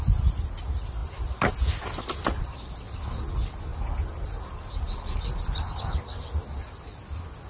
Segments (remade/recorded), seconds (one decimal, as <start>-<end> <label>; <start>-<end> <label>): 0.0-7.5 recorded